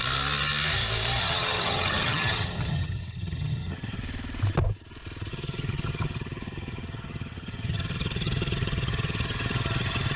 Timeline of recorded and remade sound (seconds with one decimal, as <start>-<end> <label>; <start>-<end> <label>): 0.0-1.2 recorded; 1.2-4.0 remade; 4.0-5.3 recorded; 5.3-10.2 remade